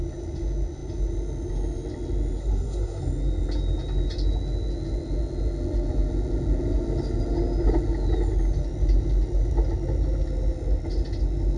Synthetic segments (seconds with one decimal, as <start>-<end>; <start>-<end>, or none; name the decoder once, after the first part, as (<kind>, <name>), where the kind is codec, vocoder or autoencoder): 2.4-3.0 (codec, SNAC)